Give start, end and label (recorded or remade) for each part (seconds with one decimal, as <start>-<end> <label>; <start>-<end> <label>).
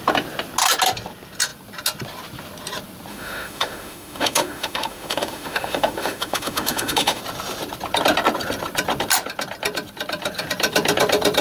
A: 0.0-3.1 recorded; 3.1-7.2 remade; 7.2-11.4 recorded